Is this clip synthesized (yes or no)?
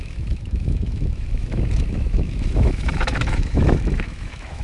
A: yes